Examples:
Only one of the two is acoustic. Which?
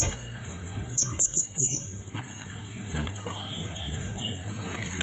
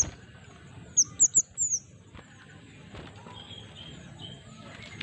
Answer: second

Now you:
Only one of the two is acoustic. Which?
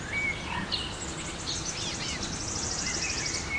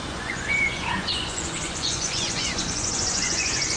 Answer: first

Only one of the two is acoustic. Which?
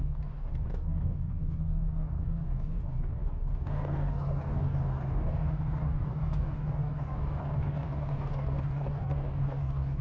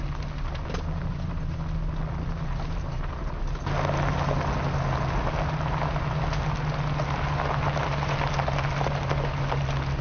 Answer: second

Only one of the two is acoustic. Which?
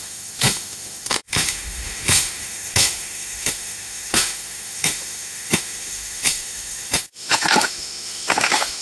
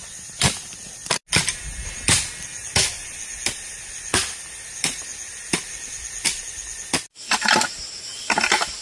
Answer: second